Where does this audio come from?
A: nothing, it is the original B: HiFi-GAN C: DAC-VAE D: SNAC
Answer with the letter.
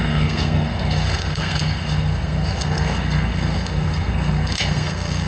D